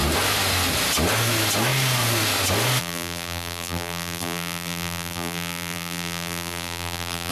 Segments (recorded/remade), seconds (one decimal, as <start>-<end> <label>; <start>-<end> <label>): 0.0-2.8 recorded; 2.8-7.3 remade